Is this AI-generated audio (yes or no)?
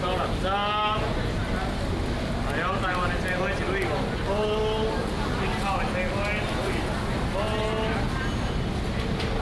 no